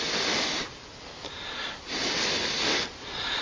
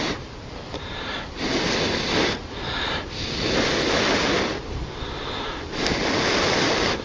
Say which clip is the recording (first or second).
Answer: first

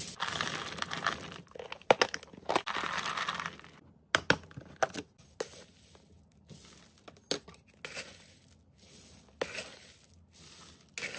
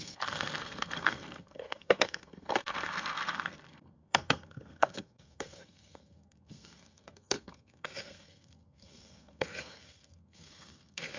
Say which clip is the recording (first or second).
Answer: first